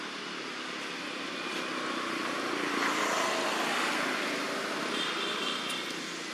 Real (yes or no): yes